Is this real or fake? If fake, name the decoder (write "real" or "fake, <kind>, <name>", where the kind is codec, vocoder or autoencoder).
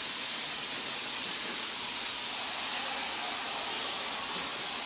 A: real